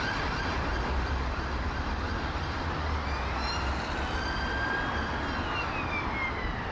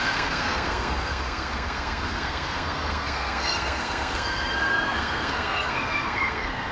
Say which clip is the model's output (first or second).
second